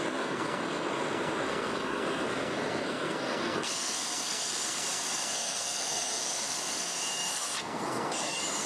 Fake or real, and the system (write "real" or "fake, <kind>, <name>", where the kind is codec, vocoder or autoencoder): fake, codec, SNAC